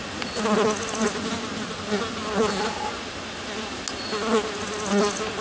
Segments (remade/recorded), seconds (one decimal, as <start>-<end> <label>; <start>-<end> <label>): 0.0-5.4 recorded